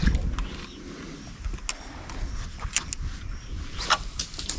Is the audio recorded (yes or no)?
yes